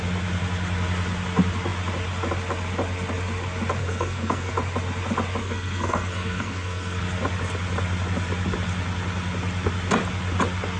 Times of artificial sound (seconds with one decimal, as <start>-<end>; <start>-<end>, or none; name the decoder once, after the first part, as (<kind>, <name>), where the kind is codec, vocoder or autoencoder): 3.8-4.5 (codec, SNAC); 5.4-7.0